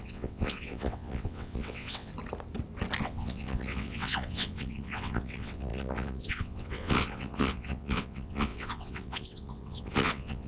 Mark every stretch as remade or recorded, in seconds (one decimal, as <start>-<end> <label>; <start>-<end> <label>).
0.0-2.1 remade; 2.1-3.0 recorded; 3.0-10.5 remade